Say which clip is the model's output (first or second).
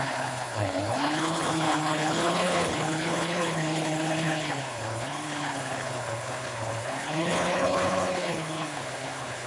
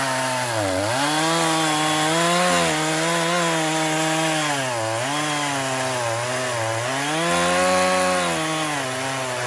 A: first